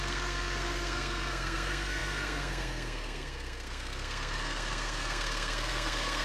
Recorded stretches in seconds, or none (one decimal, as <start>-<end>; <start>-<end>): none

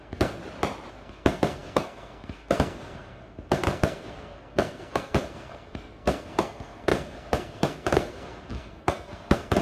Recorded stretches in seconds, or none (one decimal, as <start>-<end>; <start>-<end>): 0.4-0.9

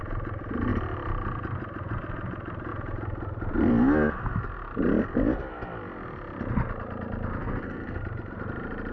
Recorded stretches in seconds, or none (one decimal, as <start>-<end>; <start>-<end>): 0.0-7.4; 8.0-8.9

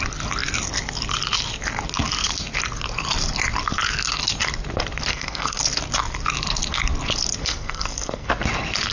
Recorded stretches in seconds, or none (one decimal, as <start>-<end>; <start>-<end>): 0.0-5.1; 5.6-7.4; 8.3-8.9

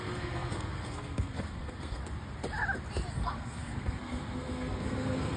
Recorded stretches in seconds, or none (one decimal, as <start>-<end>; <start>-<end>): 2.0-3.1